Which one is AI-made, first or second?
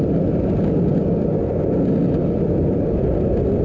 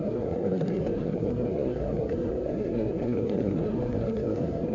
second